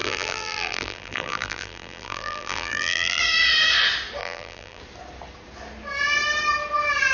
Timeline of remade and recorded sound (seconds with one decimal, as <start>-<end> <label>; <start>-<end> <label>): 0.0-3.2 remade; 3.2-4.2 recorded; 4.2-4.8 remade; 4.8-7.1 recorded